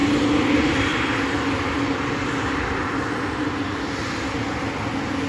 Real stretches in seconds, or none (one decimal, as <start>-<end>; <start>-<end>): 0.0-5.3